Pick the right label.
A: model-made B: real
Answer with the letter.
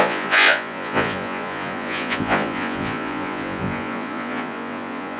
A